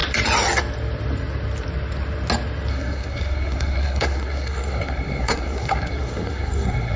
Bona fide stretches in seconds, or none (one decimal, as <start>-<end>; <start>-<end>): 0.0-2.7

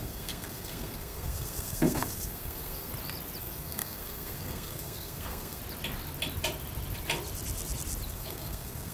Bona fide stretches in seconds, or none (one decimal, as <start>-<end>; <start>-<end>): 2.9-3.4; 5.6-8.1

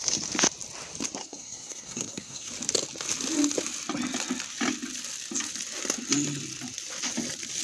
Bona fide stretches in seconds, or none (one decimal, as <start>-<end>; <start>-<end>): 0.0-1.2; 2.5-7.6

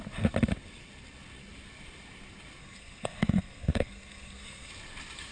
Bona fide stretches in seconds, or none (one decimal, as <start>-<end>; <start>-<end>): 0.0-2.6; 4.7-5.3

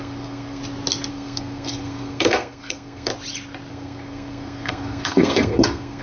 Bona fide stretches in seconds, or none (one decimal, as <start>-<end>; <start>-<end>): 0.6-1.1; 3.1-3.7

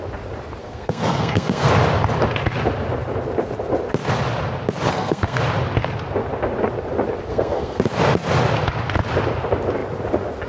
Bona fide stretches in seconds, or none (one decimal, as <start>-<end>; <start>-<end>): 0.0-0.6; 1.7-4.9; 5.4-7.3; 7.8-10.5

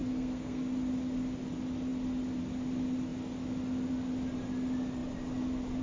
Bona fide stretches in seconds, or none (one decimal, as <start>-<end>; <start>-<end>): 0.6-5.8

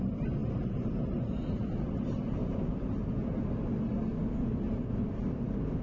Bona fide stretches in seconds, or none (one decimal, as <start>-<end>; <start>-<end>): 0.0-5.8